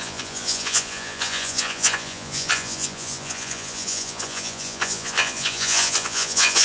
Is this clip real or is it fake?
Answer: fake